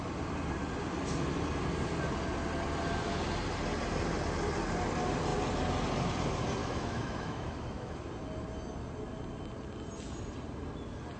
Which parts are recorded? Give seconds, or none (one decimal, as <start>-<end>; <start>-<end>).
0.0-6.6; 8.0-11.2